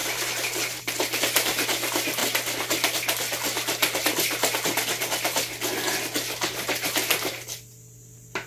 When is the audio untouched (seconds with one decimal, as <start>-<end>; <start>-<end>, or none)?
0.0-8.5